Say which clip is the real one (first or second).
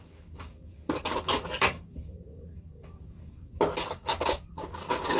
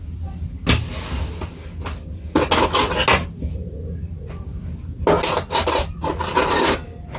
second